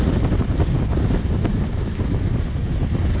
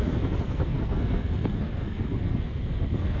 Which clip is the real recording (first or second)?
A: first